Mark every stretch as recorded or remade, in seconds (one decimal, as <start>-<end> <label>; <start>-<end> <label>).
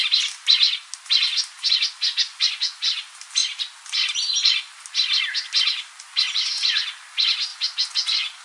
0.0-2.3 recorded; 2.3-2.9 remade; 2.9-7.5 recorded; 7.5-8.4 remade